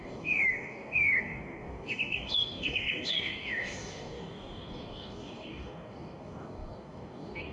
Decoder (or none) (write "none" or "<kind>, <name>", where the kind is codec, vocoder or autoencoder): codec, DAC